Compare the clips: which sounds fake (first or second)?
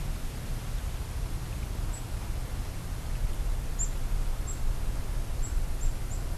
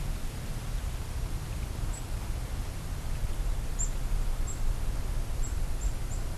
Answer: second